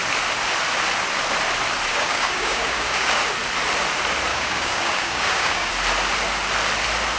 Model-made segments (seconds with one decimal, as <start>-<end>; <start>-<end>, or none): 1.9-3.2; 4.3-5.7